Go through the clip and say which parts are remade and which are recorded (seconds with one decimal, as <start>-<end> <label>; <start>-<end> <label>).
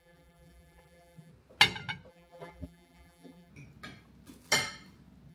0.0-1.3 remade; 1.3-2.1 recorded; 2.1-3.5 remade; 3.5-5.3 recorded